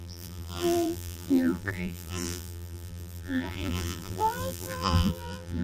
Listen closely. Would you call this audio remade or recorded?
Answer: remade